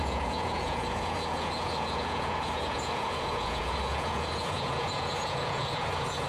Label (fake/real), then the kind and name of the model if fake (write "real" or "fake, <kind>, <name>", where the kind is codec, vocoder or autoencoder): fake, vocoder, Vocos